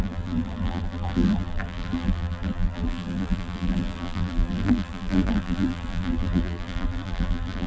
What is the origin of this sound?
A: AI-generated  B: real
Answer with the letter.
A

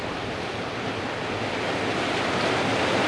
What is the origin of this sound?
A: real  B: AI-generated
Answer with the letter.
A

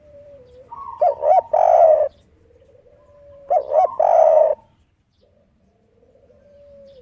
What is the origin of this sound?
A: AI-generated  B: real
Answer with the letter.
A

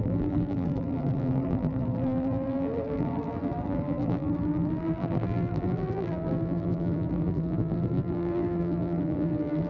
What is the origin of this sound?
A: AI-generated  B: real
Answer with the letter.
A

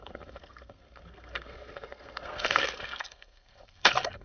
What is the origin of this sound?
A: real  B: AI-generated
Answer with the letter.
B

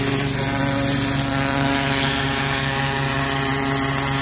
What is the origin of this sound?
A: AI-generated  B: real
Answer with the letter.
B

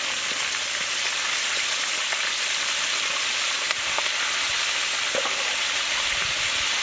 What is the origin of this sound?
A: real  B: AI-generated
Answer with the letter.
A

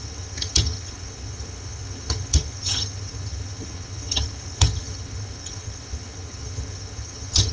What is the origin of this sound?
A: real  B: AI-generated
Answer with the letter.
B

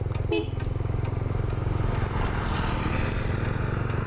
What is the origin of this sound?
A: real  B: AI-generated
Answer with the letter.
A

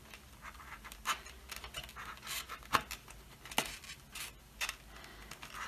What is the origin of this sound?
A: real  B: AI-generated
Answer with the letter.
A